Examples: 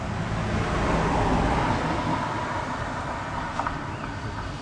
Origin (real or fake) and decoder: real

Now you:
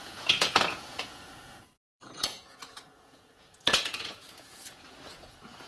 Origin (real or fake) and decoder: fake, vocoder, Vocos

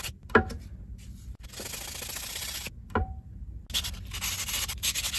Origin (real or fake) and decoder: real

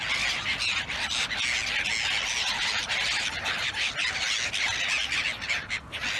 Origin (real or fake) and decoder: real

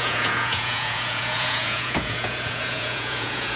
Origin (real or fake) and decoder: fake, vocoder, Vocos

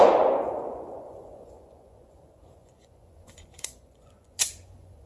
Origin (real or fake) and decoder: fake, vocoder, Vocos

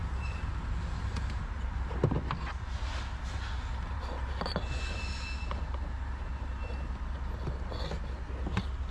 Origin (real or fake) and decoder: real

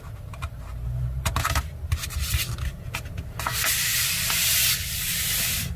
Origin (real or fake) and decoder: real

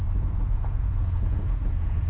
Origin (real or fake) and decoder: fake, vocoder, Vocos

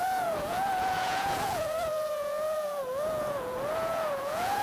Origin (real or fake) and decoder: fake, vocoder, Vocos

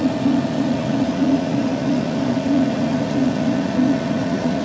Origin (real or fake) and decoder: fake, vocoder, Vocos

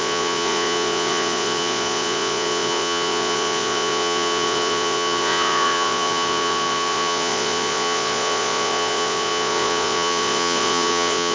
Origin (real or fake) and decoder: fake, vocoder, Vocos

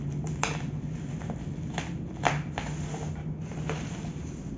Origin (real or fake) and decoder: real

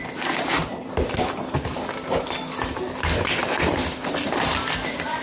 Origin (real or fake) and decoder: real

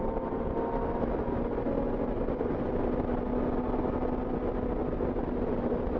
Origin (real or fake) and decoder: real